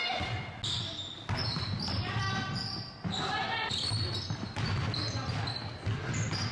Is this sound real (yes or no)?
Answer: yes